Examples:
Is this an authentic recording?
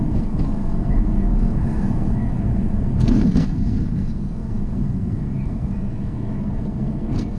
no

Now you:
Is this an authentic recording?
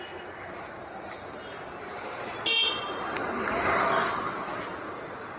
yes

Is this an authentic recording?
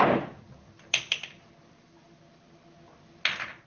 yes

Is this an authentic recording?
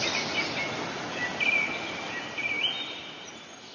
yes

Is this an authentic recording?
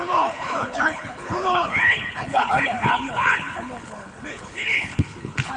no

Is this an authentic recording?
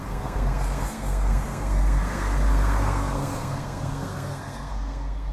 no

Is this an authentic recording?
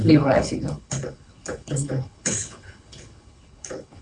no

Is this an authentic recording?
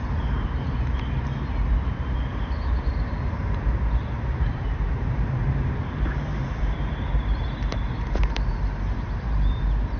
no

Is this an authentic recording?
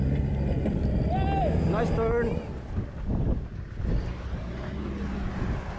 yes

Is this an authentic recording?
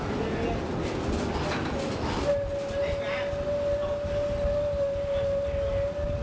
yes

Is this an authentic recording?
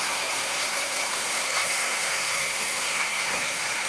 no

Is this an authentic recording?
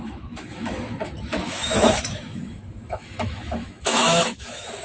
no